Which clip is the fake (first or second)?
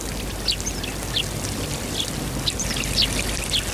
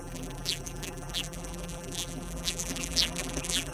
second